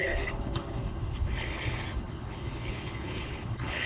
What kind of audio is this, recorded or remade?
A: remade